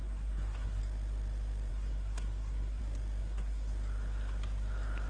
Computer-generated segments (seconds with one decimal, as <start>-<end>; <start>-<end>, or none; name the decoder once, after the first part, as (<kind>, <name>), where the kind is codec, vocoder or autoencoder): 0.0-0.8 (codec, SNAC); 1.7-2.8; 3.2-3.7